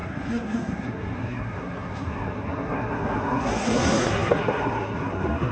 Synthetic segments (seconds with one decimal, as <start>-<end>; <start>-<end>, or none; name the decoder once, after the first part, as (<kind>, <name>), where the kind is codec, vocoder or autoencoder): 0.0-5.5 (codec, SNAC)